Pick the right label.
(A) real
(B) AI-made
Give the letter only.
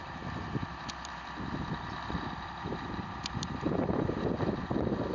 B